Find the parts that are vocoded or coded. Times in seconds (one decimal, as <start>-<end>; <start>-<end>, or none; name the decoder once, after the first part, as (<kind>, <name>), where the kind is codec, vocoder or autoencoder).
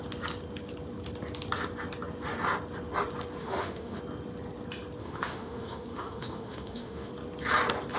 3.4-4.0 (autoencoder, DAC-VAE); 5.0-7.1